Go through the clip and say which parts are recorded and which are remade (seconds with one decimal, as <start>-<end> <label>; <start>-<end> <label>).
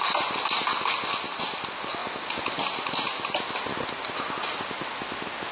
0.0-5.5 recorded